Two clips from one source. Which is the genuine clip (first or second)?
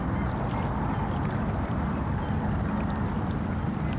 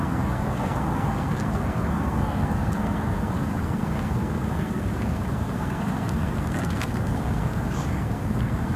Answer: first